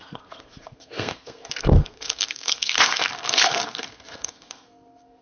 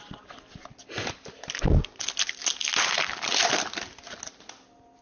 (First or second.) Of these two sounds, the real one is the second